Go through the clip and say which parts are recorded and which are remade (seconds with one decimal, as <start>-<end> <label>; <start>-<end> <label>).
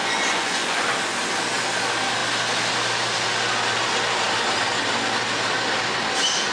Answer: 0.0-0.8 remade; 0.8-6.5 recorded